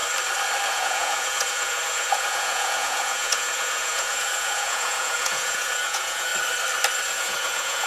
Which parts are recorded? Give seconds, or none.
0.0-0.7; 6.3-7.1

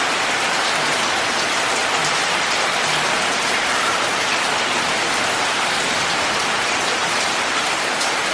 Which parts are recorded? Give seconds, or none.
0.0-1.8; 6.4-7.0; 7.6-8.3

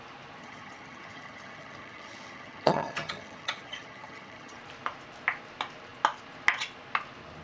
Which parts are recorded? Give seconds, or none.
0.0-0.4; 4.6-7.4